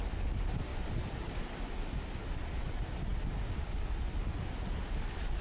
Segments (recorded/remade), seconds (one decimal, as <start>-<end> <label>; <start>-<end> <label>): 0.0-5.4 recorded